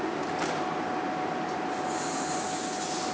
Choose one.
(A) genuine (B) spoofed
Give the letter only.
A